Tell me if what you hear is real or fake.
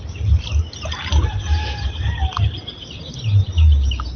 real